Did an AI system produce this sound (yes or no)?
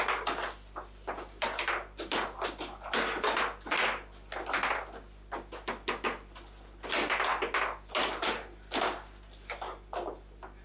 no